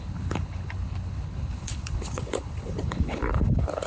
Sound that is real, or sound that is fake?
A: fake